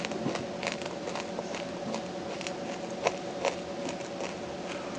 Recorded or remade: recorded